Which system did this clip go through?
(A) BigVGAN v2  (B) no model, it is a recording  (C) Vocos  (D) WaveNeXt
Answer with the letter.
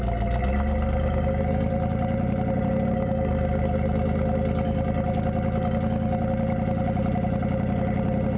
B